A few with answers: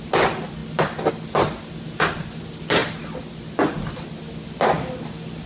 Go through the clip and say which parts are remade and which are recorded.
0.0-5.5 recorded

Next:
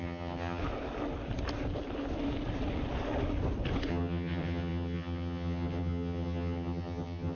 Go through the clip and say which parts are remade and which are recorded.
0.0-0.6 remade; 0.6-3.9 recorded; 3.9-7.4 remade

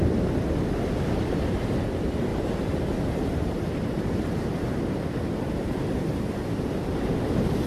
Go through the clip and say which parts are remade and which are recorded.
0.0-2.3 recorded; 2.3-4.7 remade; 4.7-7.7 recorded

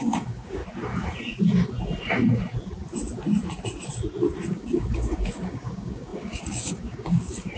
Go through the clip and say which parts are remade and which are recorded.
0.0-0.6 remade; 0.6-4.5 recorded; 4.5-7.6 remade

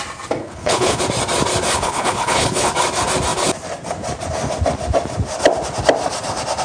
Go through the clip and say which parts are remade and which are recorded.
0.0-0.4 recorded; 0.4-1.0 remade; 1.0-1.7 recorded; 1.7-2.7 remade; 2.7-6.6 recorded

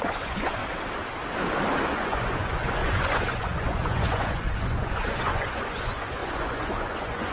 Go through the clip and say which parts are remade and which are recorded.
0.0-0.6 remade; 0.6-1.9 recorded; 1.9-7.3 remade